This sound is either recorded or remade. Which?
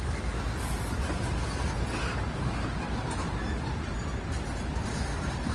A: recorded